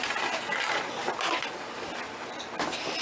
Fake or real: real